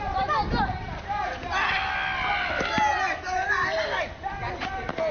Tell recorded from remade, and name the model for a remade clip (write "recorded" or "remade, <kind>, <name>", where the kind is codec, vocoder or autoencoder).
recorded